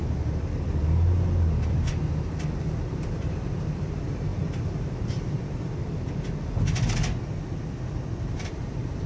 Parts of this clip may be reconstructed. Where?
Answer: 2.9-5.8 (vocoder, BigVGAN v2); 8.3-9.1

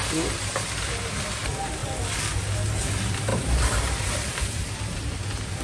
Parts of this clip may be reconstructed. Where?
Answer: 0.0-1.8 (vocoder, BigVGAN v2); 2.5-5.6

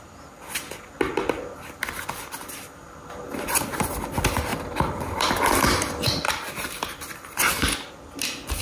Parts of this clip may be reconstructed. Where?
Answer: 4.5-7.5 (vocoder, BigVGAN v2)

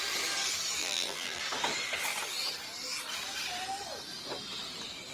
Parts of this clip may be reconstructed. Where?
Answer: 0.8-1.4 (vocoder, BigVGAN v2)

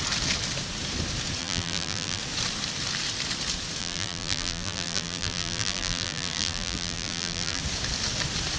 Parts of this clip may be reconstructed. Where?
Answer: 1.4-2.2 (vocoder, BigVGAN v2); 3.8-7.6

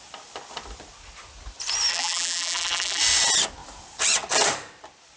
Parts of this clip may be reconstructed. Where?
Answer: 1.9-3.0 (vocoder, BigVGAN v2)

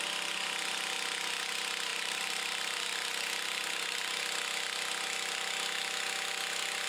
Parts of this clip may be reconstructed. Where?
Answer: 1.9-4.2 (vocoder, BigVGAN v2)